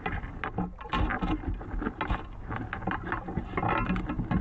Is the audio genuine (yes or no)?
yes